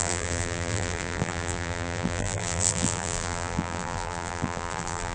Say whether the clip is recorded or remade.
remade